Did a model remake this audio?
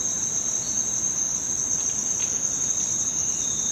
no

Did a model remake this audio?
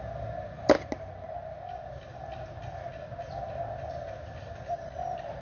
no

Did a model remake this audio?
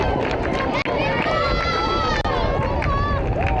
no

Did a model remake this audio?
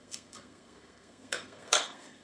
yes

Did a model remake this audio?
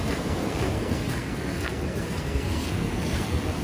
yes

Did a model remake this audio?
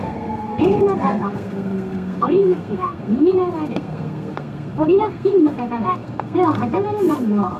yes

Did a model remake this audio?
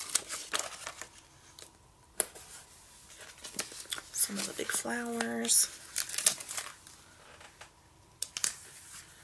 no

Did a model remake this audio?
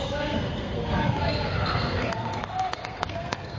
yes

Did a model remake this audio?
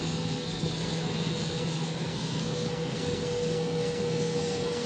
yes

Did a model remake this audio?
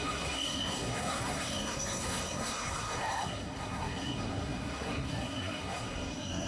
yes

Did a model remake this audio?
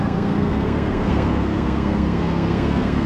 yes